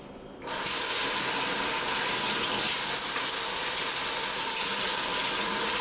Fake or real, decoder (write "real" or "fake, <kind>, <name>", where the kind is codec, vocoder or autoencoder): real